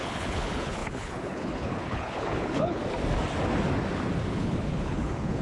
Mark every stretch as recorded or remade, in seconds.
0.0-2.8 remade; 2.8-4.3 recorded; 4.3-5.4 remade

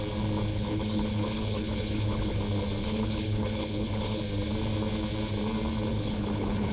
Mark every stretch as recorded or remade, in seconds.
0.0-0.5 recorded; 0.5-2.4 remade; 2.4-2.8 recorded; 2.8-4.2 remade; 4.2-5.9 recorded; 5.9-6.7 remade

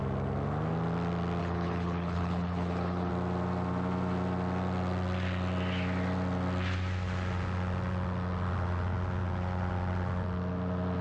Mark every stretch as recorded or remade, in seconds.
0.0-1.4 recorded; 1.4-3.1 remade; 3.1-11.0 recorded

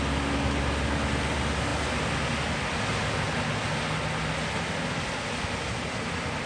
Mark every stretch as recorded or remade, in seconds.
0.0-6.5 recorded